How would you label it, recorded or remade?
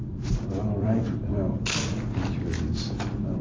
remade